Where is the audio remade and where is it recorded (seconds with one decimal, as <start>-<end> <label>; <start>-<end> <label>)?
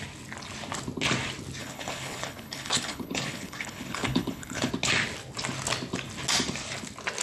0.0-1.6 recorded; 1.6-4.7 remade; 4.7-7.2 recorded